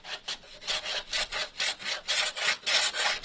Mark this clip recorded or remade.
recorded